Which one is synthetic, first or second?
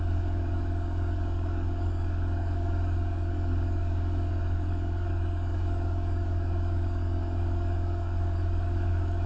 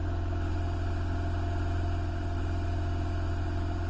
first